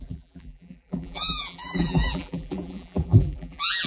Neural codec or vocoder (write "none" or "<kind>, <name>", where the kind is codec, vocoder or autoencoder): vocoder, BigVGAN v2